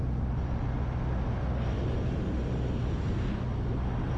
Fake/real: real